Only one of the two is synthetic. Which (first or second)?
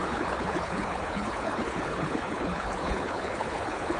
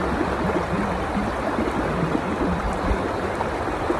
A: first